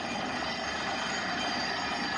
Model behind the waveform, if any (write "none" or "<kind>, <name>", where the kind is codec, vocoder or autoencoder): none